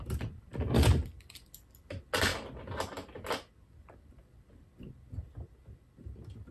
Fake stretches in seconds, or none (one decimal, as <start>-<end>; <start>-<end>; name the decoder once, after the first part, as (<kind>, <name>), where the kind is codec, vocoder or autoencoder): 0.5-1.9 (vocoder, BigVGAN v2)